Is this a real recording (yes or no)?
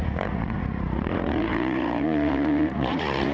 no